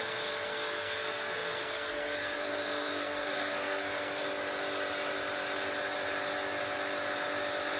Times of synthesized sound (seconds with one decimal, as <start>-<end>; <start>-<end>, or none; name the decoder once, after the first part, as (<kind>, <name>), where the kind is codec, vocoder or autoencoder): 0.0-4.2 (codec, SNAC)